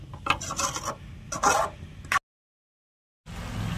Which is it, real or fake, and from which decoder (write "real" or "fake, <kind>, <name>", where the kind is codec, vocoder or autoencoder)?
real